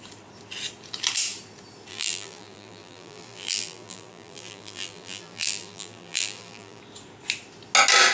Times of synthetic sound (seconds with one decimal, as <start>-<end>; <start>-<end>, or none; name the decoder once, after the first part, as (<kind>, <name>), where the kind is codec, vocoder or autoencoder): 1.9-6.8 (vocoder, BigVGAN v2)